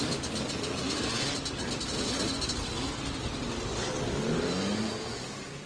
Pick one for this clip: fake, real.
real